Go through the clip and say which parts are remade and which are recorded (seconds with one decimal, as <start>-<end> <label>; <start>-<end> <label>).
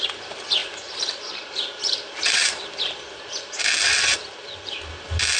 0.0-0.6 recorded; 0.6-3.4 remade; 3.4-4.1 recorded; 4.1-4.9 remade; 4.9-5.4 recorded